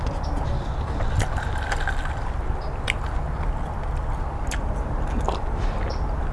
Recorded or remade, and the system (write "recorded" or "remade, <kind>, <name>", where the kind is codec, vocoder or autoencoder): recorded